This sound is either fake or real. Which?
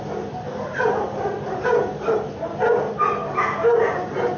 real